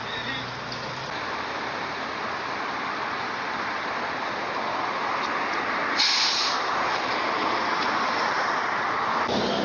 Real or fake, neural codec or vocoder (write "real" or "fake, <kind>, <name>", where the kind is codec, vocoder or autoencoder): real